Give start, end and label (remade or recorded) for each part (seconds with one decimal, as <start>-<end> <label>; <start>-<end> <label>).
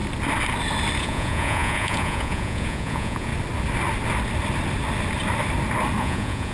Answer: 0.0-1.0 recorded; 1.0-3.3 remade; 3.3-6.0 recorded; 6.0-6.5 remade